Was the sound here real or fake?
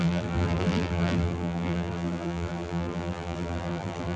fake